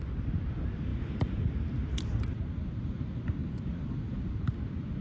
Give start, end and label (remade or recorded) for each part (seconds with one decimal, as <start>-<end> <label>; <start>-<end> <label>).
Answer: 0.0-5.0 recorded